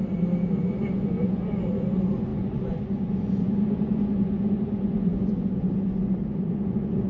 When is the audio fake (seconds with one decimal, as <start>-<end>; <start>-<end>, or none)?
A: 0.5-7.1